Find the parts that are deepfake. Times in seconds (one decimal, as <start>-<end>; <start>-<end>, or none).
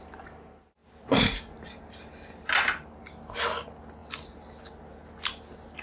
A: 0.8-1.8